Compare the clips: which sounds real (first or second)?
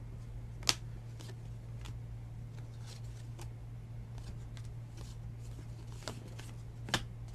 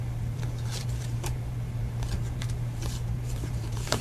first